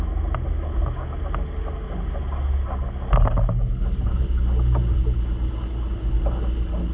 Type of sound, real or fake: real